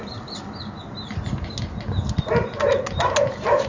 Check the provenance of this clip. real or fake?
real